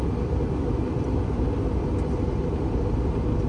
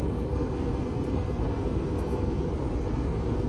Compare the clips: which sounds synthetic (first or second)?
second